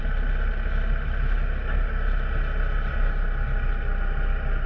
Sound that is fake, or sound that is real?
real